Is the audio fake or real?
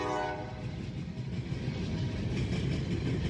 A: real